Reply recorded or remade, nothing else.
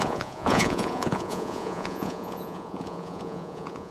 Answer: remade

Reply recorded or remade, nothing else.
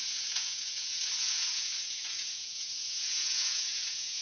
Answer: remade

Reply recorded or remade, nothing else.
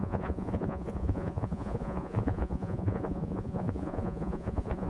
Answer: remade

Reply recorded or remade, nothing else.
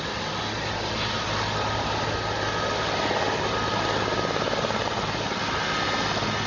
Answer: recorded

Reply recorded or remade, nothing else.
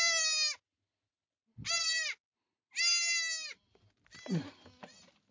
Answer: recorded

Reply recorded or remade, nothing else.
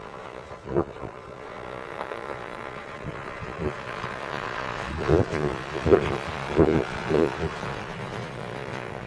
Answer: remade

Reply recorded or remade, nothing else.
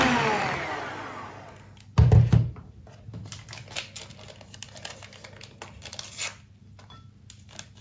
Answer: recorded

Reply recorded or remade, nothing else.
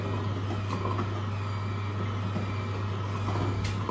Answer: recorded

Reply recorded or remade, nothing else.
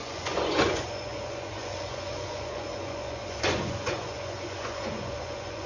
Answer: remade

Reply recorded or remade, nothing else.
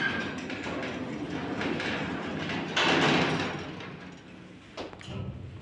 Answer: recorded